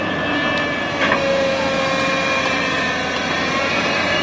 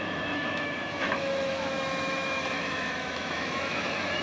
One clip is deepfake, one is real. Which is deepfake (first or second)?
second